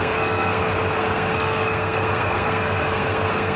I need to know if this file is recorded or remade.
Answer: remade